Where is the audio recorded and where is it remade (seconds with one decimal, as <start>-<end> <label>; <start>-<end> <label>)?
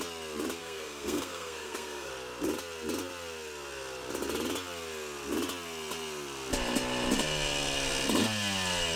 0.0-0.6 recorded; 0.6-2.1 remade; 2.1-9.0 recorded